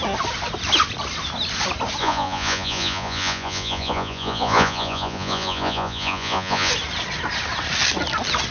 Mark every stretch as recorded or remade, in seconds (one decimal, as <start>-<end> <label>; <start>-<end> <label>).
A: 0.0-2.0 recorded; 2.0-6.7 remade; 6.7-8.5 recorded